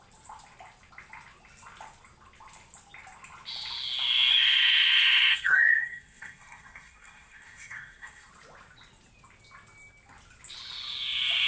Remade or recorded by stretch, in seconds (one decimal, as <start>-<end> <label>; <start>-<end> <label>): 0.0-4.3 recorded; 4.3-8.3 remade; 8.3-11.5 recorded